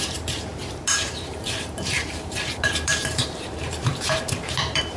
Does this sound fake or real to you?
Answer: fake